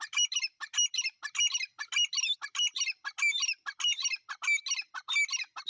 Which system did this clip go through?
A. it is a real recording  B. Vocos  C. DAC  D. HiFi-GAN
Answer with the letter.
A